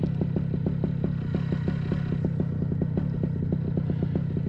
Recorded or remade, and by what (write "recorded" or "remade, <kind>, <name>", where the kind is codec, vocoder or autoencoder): recorded